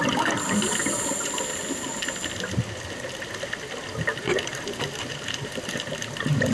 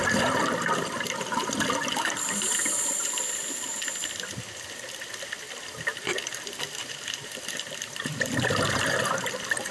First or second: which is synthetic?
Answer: second